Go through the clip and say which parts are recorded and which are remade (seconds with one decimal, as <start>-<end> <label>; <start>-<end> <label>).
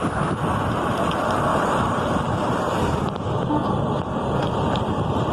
0.0-1.5 recorded; 1.5-3.2 remade; 3.2-5.3 recorded